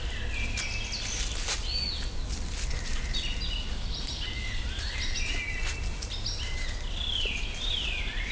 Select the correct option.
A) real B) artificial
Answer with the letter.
A